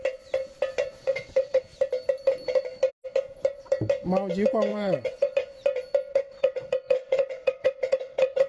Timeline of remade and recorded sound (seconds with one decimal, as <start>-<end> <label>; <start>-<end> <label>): 0.0-1.0 recorded; 1.0-1.6 remade; 1.6-4.7 recorded; 4.7-5.3 remade; 5.3-6.1 recorded; 6.1-8.5 remade